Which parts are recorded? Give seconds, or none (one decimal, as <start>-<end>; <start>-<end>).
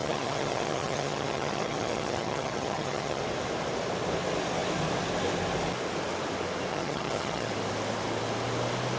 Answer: 3.2-6.7; 7.5-9.0